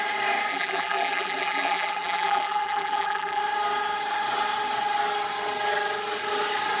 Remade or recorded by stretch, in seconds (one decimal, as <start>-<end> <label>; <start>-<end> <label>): 0.0-0.5 recorded; 0.5-3.4 remade; 3.4-6.8 recorded